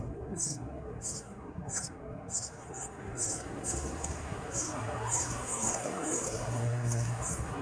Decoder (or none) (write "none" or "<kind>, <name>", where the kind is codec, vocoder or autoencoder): codec, SNAC